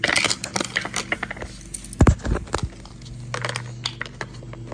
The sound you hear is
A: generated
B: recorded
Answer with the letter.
B